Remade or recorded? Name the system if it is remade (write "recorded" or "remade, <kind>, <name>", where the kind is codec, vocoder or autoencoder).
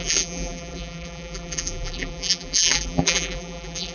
remade, vocoder, BigVGAN v2